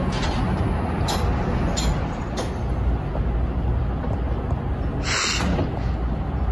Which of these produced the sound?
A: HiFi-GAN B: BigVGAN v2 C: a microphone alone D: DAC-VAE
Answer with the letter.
C